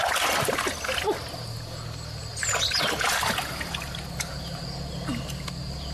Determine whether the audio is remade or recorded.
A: recorded